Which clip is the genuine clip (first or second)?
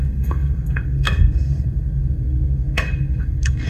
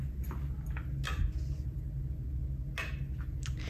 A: second